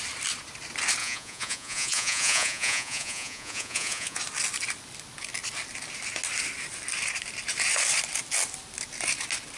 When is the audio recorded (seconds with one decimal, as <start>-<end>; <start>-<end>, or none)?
0.0-1.0; 4.2-9.6